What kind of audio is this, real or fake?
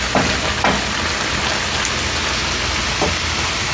real